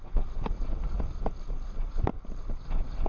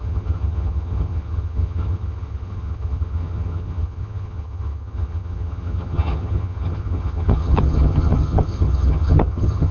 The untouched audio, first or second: first